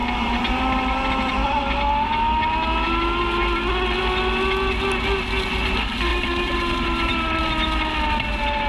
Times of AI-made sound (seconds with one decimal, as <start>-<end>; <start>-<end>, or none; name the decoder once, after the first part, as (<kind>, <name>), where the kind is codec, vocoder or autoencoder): 0.0-1.9 (vocoder, BigVGAN v2); 6.1-7.4

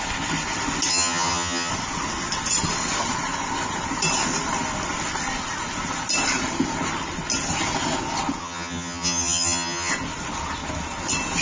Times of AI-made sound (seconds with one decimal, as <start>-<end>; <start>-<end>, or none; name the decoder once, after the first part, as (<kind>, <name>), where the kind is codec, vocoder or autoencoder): 0.9-1.7 (vocoder, HiFi-GAN); 8.4-9.9

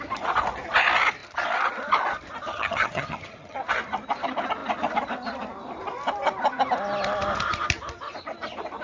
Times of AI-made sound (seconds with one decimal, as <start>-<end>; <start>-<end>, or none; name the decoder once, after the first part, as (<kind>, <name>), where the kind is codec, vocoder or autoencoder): 2.5-3.6 (vocoder, HiFi-GAN)